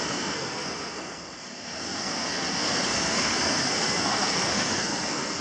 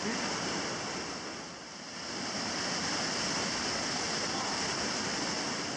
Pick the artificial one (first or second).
first